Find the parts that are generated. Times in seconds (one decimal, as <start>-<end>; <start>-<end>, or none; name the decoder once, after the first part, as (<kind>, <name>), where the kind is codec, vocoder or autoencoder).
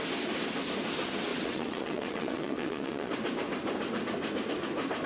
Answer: 1.3-3.1 (vocoder, WaveNeXt)